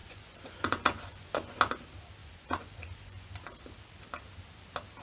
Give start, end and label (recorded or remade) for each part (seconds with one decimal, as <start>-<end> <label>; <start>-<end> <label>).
0.0-1.6 remade; 1.6-2.2 recorded; 2.2-3.3 remade; 3.3-5.0 recorded